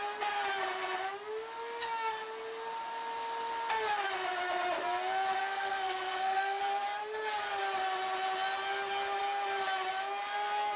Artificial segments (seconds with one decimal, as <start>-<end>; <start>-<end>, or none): 5.4-6.6